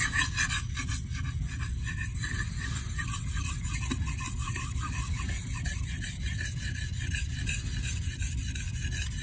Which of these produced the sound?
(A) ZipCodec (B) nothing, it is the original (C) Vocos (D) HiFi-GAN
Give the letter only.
B